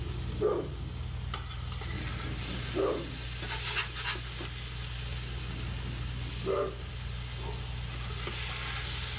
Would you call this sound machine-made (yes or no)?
no